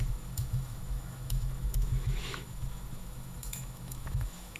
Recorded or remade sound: remade